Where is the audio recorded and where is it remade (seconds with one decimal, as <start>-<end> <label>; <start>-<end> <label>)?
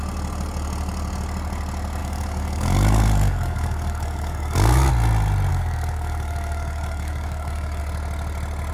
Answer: 0.0-2.0 recorded; 2.0-4.9 remade; 4.9-5.5 recorded; 5.5-7.8 remade; 7.8-8.7 recorded